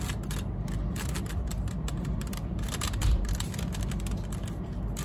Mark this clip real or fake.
real